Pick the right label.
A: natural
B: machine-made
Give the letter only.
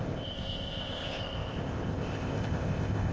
B